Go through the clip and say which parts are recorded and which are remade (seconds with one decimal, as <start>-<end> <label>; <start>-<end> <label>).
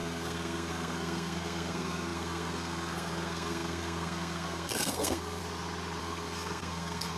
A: 0.0-5.4 remade; 5.4-6.0 recorded; 6.0-7.2 remade